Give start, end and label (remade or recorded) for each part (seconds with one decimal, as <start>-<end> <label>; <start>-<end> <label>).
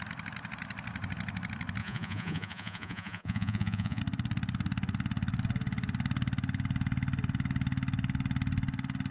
0.0-1.8 recorded; 1.8-4.0 remade; 4.0-9.1 recorded